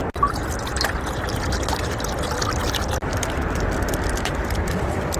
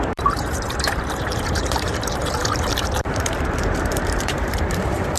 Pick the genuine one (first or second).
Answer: first